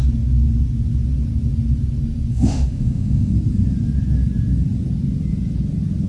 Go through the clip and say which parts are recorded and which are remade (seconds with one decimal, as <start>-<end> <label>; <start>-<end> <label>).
0.0-2.3 recorded; 2.3-3.3 remade; 3.3-6.1 recorded